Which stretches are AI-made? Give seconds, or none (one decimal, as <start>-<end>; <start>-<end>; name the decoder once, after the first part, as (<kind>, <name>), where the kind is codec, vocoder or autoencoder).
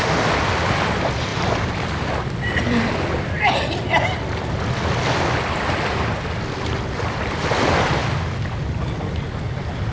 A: 1.3-2.1 (vocoder, BigVGAN v2)